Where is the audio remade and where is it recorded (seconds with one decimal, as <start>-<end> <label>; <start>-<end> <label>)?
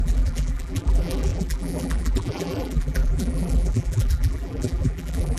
0.0-5.4 remade